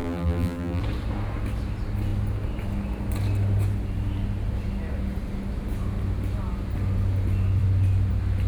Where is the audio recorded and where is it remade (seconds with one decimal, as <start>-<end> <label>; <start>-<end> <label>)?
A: 0.0-0.8 remade; 0.8-8.5 recorded